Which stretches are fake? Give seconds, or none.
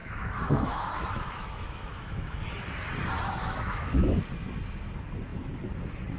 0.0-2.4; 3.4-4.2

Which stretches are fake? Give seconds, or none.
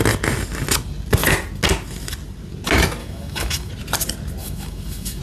3.0-3.7; 4.4-5.2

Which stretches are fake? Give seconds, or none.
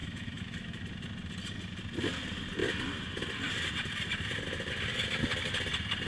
0.0-0.8